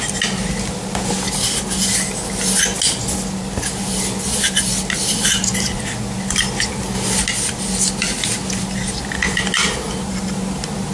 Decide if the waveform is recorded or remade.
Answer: recorded